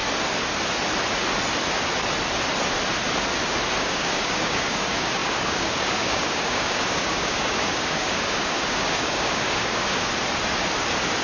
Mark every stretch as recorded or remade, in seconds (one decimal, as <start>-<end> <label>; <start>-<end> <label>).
0.0-3.8 recorded; 3.8-10.1 remade; 10.1-11.2 recorded